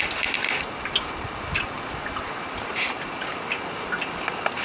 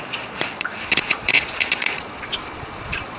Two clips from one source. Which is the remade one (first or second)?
second